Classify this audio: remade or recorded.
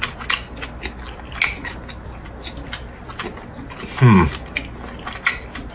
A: recorded